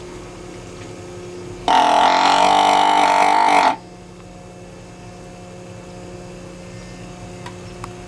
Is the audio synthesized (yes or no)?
no